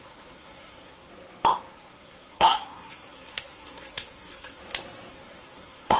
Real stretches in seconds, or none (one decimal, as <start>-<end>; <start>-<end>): 1.1-1.7; 4.6-5.1